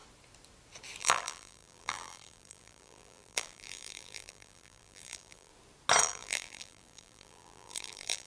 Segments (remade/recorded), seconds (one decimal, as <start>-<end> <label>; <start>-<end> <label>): 0.0-1.0 recorded; 1.0-5.5 remade; 5.5-6.0 recorded; 6.0-8.3 remade